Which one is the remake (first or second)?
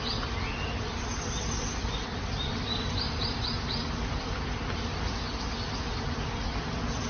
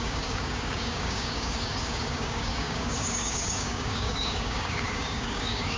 second